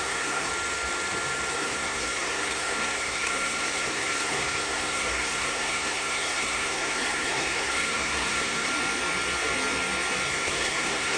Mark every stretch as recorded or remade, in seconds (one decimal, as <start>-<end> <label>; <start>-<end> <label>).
0.0-0.5 remade; 0.5-1.5 recorded; 1.5-8.7 remade; 8.7-10.3 recorded; 10.3-11.2 remade